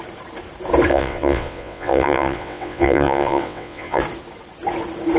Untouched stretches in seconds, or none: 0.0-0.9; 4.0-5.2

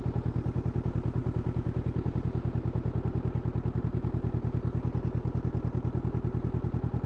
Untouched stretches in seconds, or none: 0.0-7.1

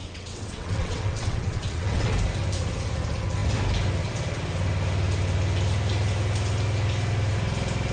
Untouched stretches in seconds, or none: 2.1-7.9

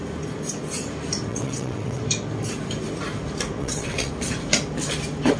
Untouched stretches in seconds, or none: 0.0-1.3; 2.0-3.6; 4.1-5.4

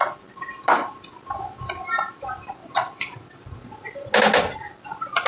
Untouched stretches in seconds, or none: 0.0-2.6; 3.4-5.3

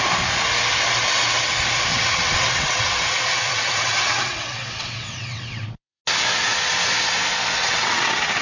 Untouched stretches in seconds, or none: 0.0-1.9; 6.0-7.6